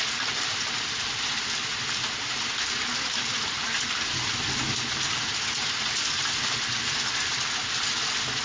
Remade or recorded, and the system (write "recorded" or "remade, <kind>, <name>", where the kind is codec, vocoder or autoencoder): recorded